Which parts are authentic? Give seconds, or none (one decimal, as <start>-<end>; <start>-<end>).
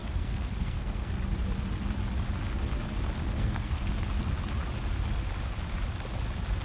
1.1-3.2; 4.1-6.6